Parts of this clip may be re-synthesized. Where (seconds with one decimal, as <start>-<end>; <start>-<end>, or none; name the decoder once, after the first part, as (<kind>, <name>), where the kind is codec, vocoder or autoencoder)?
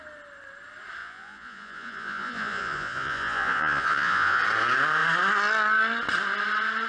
1.0-4.4 (vocoder, Vocos)